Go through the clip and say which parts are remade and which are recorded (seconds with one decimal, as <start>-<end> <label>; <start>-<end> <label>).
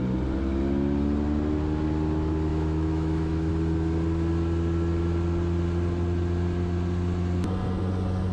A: 0.0-2.5 recorded; 2.5-3.5 remade; 3.5-8.3 recorded